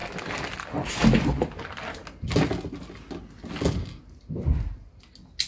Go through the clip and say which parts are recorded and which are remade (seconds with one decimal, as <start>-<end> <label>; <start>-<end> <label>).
0.0-5.5 recorded